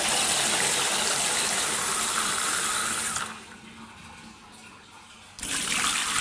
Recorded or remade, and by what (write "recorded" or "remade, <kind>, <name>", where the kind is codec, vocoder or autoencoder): recorded